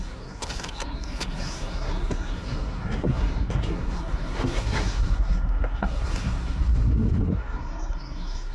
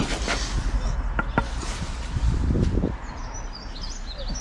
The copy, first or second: first